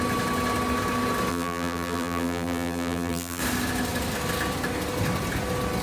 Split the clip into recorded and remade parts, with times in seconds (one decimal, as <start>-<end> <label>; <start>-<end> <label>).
0.0-1.3 recorded; 1.3-3.4 remade; 3.4-5.8 recorded